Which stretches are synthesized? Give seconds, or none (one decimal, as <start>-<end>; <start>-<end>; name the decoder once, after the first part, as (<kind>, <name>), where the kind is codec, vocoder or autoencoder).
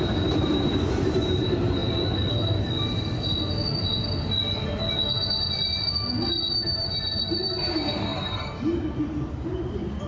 0.0-1.8 (vocoder, BigVGAN v2); 6.5-10.1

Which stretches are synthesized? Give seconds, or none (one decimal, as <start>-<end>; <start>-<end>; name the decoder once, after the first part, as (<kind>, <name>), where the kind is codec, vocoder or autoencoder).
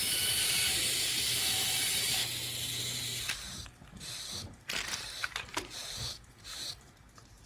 0.0-2.2 (vocoder, BigVGAN v2); 2.8-7.5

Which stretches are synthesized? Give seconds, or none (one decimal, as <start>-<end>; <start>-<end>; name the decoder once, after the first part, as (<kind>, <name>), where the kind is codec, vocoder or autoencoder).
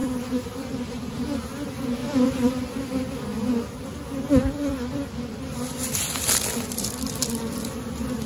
0.0-1.0 (vocoder, BigVGAN v2); 2.0-3.0; 4.4-6.4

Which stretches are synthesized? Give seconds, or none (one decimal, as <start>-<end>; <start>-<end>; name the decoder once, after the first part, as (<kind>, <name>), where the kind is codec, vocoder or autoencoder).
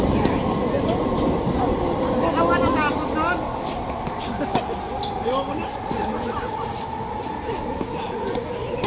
5.6-8.4 (vocoder, BigVGAN v2)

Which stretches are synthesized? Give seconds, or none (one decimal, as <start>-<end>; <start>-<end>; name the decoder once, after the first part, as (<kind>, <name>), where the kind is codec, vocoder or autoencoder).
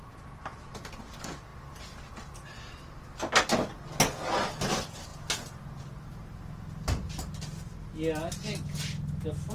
none